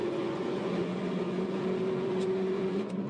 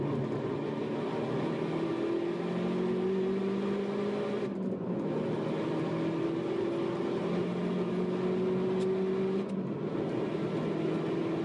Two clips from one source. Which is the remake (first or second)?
first